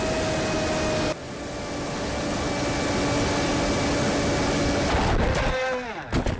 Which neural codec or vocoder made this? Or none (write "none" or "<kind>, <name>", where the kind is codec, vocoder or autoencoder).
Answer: none